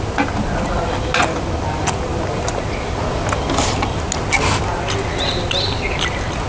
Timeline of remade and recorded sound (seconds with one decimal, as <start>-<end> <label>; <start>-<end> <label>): 0.0-6.5 recorded